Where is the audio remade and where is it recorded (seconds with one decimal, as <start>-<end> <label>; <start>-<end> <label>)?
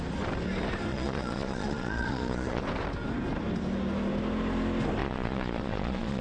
0.0-0.9 recorded; 0.9-2.6 remade; 2.6-5.0 recorded; 5.0-6.2 remade